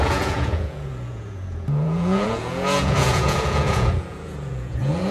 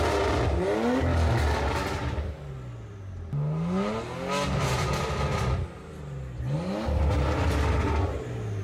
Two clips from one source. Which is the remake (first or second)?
first